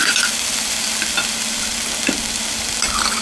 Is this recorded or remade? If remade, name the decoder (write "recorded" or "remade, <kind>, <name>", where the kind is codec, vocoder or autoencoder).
recorded